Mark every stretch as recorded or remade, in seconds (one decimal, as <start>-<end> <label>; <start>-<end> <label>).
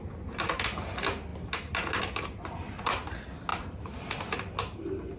0.0-3.5 recorded; 3.5-4.2 remade; 4.2-5.2 recorded